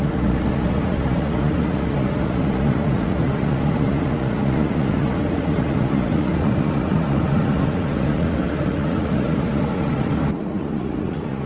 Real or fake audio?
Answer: fake